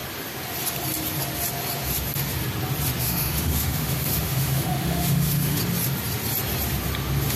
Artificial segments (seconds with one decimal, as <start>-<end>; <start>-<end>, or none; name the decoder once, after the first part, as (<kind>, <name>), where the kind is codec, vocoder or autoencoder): 3.0-5.6 (autoencoder, DAC-VAE)